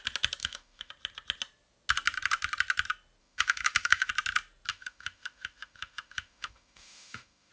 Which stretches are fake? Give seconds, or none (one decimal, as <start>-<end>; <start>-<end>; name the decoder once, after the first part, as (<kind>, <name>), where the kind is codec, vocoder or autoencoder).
0.4-0.9 (autoencoder, DAC-VAE); 3.2-4.1; 4.7-7.5